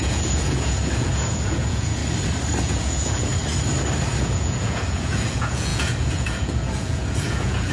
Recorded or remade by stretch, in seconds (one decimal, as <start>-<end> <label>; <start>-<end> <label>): 0.0-2.0 remade; 2.0-2.6 recorded; 2.6-3.3 remade; 3.3-4.2 recorded; 4.2-7.7 remade